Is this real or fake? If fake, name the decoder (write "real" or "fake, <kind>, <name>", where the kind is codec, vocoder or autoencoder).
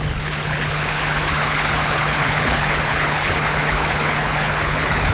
fake, codec, HILCodec